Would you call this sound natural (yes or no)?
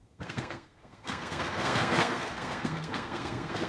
no